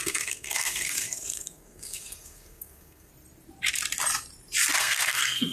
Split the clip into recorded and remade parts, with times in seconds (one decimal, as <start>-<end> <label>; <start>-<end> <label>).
0.0-3.1 remade; 3.1-4.8 recorded; 4.8-5.5 remade